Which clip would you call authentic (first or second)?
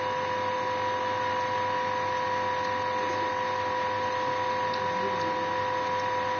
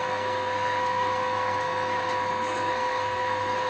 first